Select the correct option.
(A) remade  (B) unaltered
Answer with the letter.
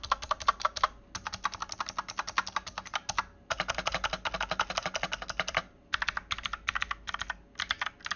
B